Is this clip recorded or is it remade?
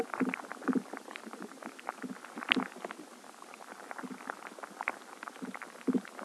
recorded